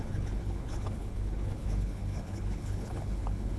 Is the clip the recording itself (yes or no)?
no